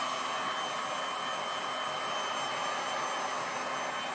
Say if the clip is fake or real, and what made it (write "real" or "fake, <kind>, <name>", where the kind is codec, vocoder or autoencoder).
real